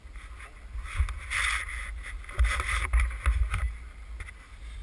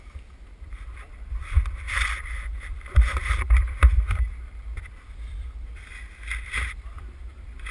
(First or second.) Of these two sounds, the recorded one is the first